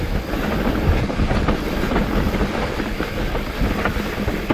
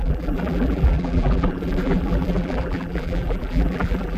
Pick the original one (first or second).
first